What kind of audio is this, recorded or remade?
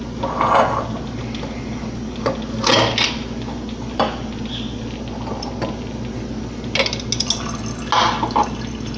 recorded